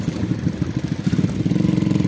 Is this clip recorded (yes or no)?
no